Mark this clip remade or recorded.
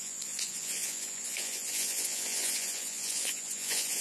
remade